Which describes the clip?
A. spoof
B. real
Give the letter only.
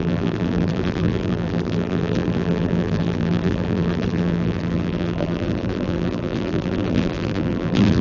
A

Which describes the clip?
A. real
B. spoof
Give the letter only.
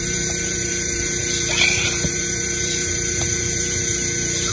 B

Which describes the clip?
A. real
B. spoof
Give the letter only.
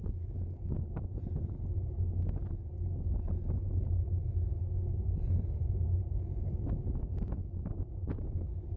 A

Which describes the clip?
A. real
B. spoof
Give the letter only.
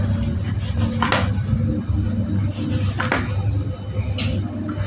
A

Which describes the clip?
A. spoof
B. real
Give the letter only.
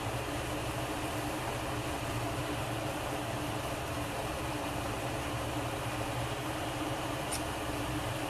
A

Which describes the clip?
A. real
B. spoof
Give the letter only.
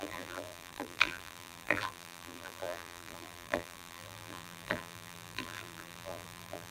B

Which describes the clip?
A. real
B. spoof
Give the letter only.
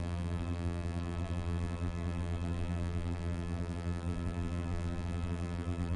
B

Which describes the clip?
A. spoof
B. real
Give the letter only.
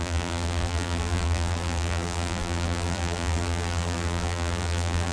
A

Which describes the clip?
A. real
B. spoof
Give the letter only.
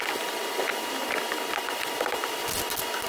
A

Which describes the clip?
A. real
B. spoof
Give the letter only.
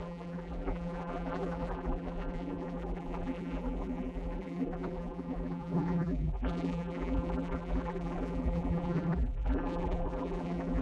B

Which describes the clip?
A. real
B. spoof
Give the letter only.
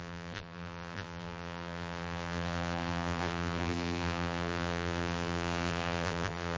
B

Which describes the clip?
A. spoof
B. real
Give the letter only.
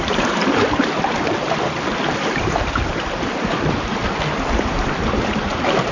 A